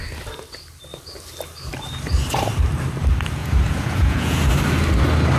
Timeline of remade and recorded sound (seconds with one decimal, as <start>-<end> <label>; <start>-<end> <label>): 0.0-3.4 recorded; 3.4-4.4 remade; 4.4-5.4 recorded